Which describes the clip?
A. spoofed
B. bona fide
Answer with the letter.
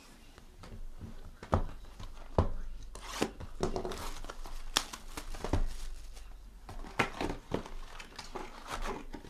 B